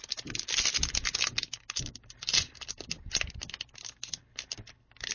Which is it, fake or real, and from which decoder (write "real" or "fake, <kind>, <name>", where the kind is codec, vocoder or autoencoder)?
real